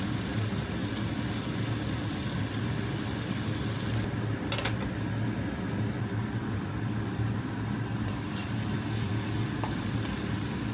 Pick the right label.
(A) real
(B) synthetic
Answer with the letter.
A